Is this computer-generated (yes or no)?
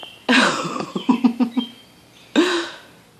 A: no